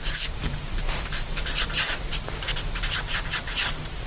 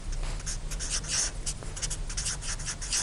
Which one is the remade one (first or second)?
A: first